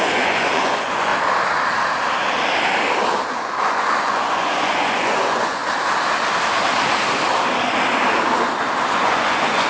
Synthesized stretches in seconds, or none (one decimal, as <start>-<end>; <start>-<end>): 0.0-1.1; 3.3-5.6; 8.9-9.7